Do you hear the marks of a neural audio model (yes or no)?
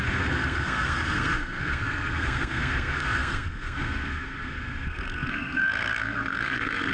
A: yes